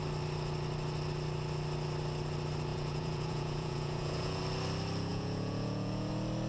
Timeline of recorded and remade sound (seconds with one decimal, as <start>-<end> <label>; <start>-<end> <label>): 0.0-2.7 recorded; 2.7-4.4 remade; 4.4-5.1 recorded; 5.1-6.1 remade; 6.1-6.5 recorded